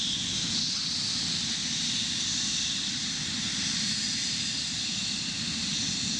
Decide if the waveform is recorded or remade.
remade